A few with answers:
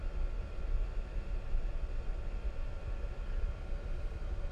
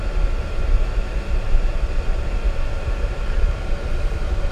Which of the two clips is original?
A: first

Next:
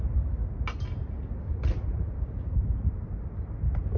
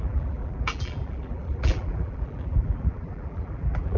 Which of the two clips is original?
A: first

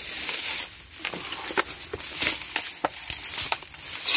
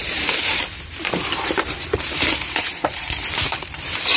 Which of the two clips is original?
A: first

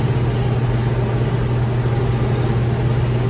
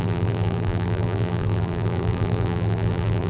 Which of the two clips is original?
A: first